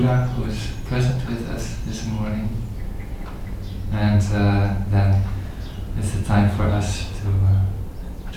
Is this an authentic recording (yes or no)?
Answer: yes